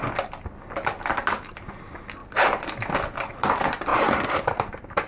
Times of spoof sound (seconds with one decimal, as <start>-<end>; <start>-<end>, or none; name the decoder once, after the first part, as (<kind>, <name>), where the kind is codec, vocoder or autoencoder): 2.2-2.8 (vocoder, BigVGAN v2); 3.9-5.1